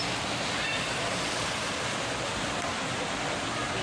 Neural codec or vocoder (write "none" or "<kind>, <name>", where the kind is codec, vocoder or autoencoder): none